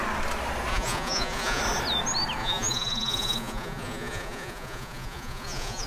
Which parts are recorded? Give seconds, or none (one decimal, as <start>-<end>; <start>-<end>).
0.0-0.7; 1.6-2.4